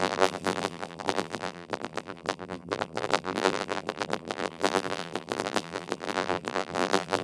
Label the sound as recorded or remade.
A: remade